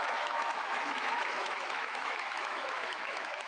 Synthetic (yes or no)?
yes